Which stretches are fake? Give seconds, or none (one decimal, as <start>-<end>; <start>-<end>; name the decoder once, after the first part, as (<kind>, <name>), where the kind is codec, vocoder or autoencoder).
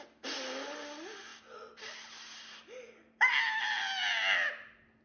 1.3-1.9 (vocoder, BigVGAN v2)